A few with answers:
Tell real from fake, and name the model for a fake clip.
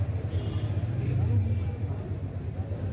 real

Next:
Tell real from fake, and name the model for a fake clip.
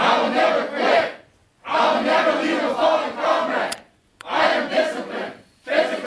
fake, vocoder, Vocos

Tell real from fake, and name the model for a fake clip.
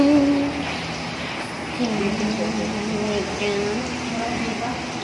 real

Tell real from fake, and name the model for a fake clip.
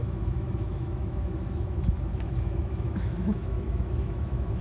fake, autoencoder, DAC-VAE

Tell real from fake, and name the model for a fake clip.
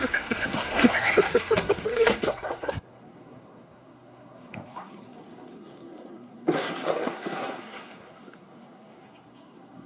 fake, codec, SNAC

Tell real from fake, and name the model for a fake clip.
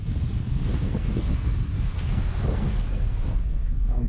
fake, codec, SNAC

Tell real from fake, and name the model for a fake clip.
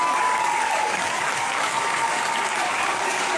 fake, codec, DAC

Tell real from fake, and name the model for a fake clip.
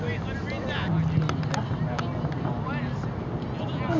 real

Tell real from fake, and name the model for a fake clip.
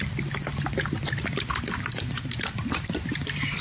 real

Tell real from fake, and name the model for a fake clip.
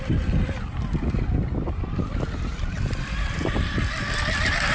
fake, vocoder, BigVGAN v2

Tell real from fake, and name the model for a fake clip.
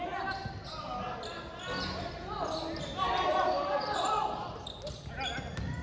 real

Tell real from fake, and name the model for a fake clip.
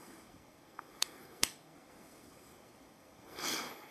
fake, codec, SNAC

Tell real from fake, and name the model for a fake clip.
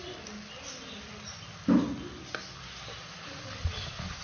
real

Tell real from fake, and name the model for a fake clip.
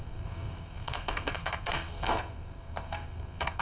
fake, codec, SNAC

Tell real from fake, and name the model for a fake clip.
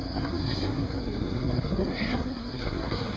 fake, codec, SNAC